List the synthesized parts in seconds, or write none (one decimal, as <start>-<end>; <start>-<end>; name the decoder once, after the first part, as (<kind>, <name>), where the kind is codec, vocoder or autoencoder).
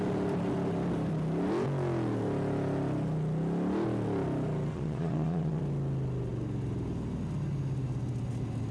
4.7-5.6 (vocoder, Vocos)